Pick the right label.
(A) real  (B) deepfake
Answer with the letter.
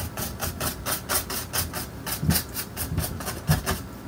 A